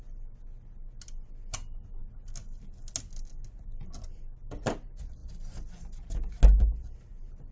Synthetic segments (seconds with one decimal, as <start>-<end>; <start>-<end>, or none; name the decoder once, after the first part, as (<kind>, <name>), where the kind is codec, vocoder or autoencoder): none